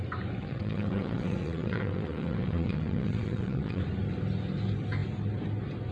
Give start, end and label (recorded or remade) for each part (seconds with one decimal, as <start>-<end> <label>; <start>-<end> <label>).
0.0-0.4 recorded; 0.4-3.8 remade; 3.8-5.9 recorded